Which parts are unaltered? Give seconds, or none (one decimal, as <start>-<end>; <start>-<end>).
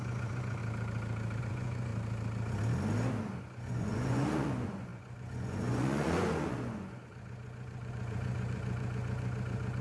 0.6-1.4; 1.9-3.4